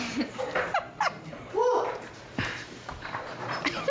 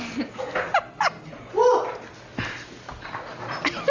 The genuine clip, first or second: second